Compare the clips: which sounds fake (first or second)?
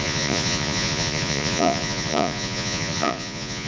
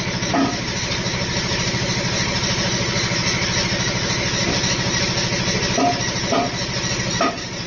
first